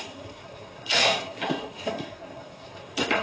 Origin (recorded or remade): remade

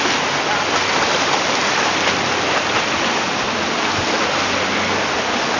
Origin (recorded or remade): recorded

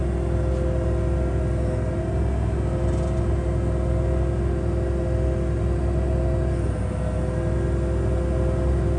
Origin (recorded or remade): recorded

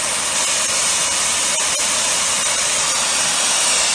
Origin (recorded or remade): recorded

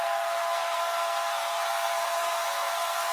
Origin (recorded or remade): remade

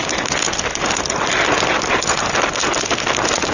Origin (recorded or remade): recorded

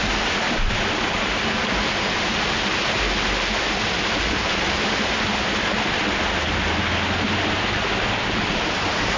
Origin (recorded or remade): recorded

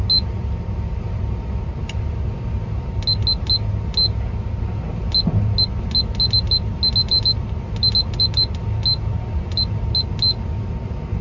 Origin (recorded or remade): recorded